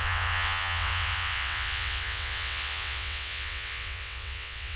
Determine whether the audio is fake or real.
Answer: fake